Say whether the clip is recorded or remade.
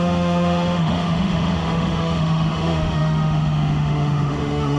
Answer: remade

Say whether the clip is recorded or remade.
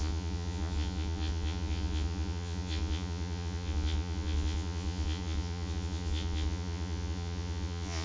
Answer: remade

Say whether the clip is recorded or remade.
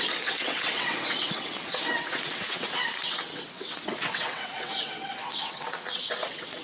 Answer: remade